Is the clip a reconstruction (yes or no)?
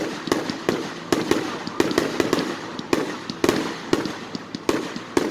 no